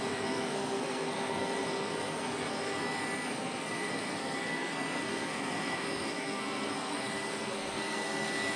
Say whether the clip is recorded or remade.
remade